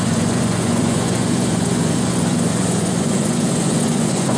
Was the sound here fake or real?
fake